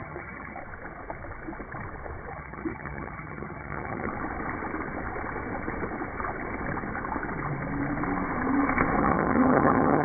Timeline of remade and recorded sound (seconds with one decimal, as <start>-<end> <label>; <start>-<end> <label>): 0.0-0.6 remade; 0.6-2.3 recorded; 2.3-4.1 remade; 4.1-9.0 recorded; 9.0-10.0 remade